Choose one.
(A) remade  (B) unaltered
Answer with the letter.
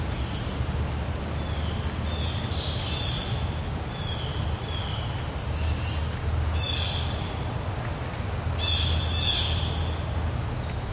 B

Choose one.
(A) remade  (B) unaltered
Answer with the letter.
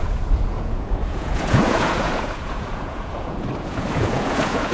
A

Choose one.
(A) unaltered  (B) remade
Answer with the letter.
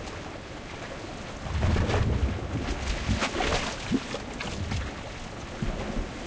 A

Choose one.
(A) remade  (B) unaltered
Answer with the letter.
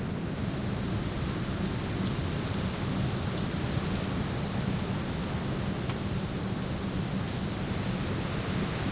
B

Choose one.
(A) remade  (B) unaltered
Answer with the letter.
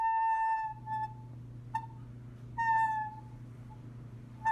B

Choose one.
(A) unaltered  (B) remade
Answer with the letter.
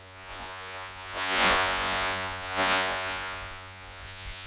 B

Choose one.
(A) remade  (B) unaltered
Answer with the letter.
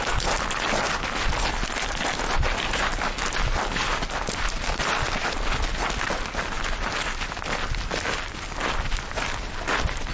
B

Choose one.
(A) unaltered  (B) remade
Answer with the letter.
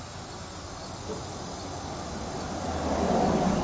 A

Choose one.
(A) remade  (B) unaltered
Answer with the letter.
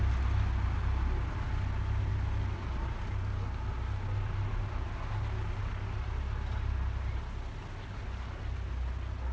B